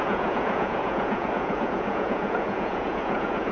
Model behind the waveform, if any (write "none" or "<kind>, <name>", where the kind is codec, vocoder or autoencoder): vocoder, Vocos